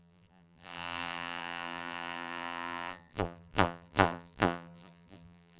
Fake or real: fake